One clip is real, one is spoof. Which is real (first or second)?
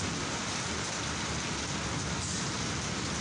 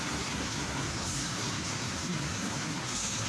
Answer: first